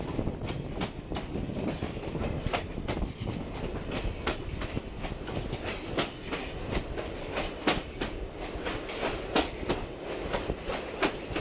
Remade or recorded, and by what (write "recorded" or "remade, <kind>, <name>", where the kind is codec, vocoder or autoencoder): recorded